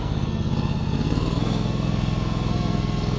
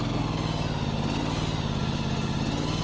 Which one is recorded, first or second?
second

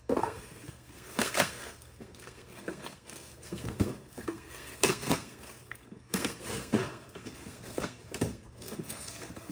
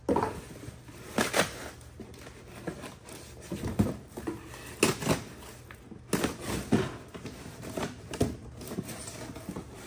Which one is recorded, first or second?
second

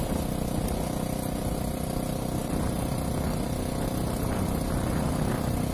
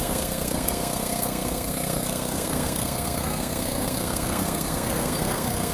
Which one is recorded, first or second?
first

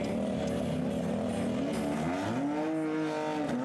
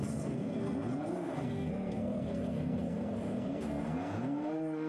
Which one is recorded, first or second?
first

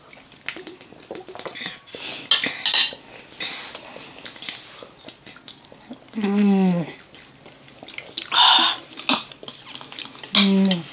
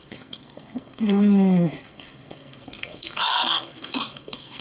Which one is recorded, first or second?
first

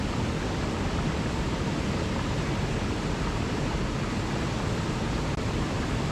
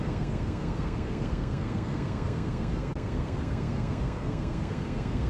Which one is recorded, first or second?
first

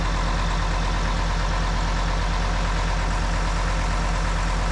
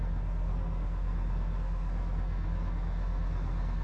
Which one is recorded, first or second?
first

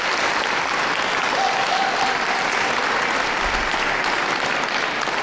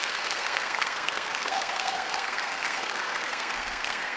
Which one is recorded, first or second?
first